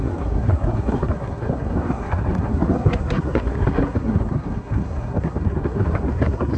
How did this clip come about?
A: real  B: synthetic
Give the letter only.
B